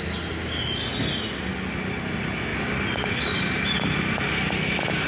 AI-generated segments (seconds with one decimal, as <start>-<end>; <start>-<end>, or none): none

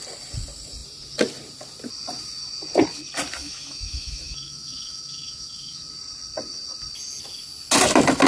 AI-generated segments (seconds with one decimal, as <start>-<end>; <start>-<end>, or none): 3.4-5.8

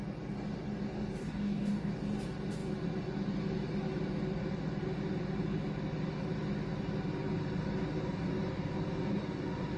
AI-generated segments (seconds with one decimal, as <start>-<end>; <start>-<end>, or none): 1.2-1.9

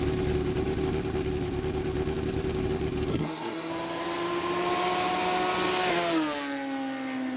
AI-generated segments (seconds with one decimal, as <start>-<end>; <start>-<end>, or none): 3.1-3.7

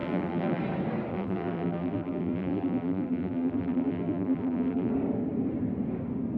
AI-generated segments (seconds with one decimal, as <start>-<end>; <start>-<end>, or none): 0.0-0.6; 1.1-4.9

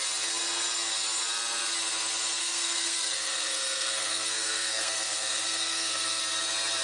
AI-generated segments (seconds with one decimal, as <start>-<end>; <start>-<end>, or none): 2.4-6.2

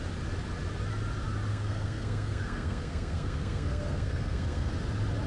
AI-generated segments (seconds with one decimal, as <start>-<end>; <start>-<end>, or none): 1.5-4.7

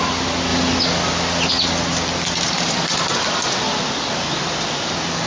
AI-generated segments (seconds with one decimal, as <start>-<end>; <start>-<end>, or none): none